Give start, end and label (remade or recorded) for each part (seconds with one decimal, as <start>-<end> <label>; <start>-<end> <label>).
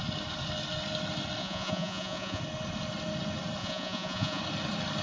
0.0-1.4 recorded; 1.4-2.4 remade; 2.4-3.6 recorded; 3.6-4.4 remade; 4.4-5.0 recorded